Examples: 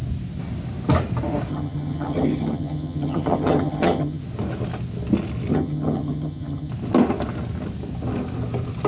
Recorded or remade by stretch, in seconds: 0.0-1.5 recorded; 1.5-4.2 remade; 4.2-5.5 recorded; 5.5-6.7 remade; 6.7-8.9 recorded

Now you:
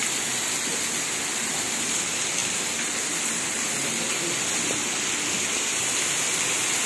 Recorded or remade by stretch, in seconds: 0.0-6.9 recorded

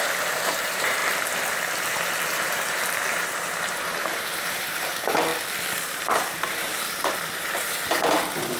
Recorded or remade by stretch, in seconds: 0.0-1.0 remade; 1.0-1.8 recorded; 1.8-5.3 remade; 5.3-5.9 recorded; 5.9-8.6 remade